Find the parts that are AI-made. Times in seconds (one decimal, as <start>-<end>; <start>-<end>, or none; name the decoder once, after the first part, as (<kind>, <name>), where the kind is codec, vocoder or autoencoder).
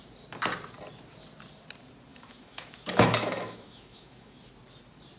2.1-4.5 (autoencoder, DAC-VAE)